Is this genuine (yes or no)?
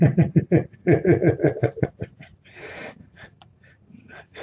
no